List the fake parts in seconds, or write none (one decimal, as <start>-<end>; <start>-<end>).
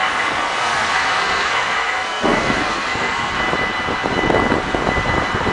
0.0-3.3